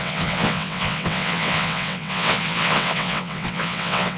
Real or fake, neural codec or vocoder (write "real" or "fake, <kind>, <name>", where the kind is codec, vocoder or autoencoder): fake, vocoder, WaveNeXt